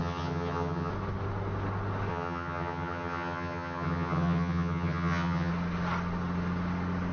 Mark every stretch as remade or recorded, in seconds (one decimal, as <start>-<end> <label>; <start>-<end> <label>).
0.0-0.9 remade; 0.9-2.1 recorded; 2.1-5.5 remade; 5.5-7.1 recorded